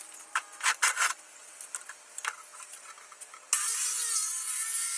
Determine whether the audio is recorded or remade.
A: recorded